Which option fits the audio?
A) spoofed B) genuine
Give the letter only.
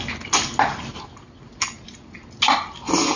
B